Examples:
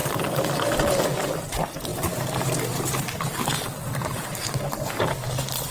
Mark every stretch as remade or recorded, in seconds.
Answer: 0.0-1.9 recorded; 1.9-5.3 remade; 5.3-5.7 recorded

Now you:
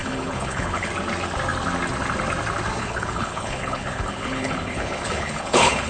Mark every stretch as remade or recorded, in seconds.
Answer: 0.0-0.9 remade; 0.9-2.8 recorded; 2.8-5.9 remade

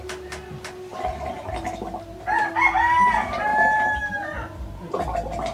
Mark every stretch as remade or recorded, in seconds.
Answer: 0.0-3.5 recorded; 3.5-4.0 remade; 4.0-5.5 recorded

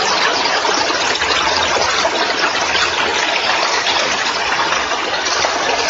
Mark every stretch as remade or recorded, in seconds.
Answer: 0.0-5.9 recorded